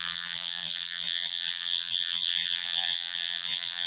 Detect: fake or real fake